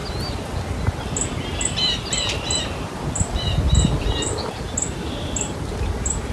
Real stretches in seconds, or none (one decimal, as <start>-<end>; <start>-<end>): 0.0-6.3

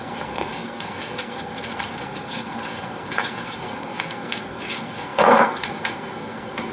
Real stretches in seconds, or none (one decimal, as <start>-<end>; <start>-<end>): none